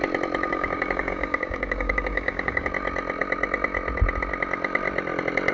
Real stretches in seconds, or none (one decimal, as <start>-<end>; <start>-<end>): 0.0-0.5; 2.7-5.5